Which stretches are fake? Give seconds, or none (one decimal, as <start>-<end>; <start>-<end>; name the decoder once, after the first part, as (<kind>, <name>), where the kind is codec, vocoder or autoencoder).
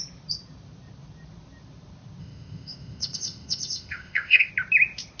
2.2-4.5 (codec, ZipCodec)